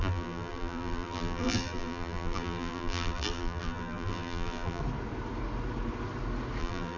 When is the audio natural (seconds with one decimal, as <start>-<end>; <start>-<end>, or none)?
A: 4.8-6.6